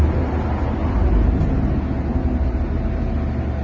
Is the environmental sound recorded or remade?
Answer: recorded